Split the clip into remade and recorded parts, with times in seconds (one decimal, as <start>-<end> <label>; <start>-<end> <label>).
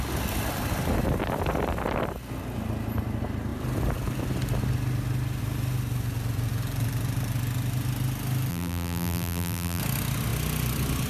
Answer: 0.0-8.5 recorded; 8.5-9.8 remade; 9.8-11.1 recorded